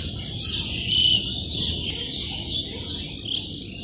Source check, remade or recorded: recorded